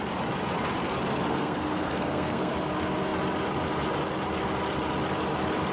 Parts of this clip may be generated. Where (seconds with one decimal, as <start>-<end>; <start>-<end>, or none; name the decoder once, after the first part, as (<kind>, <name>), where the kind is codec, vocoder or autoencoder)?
1.3-2.5 (codec, SNAC)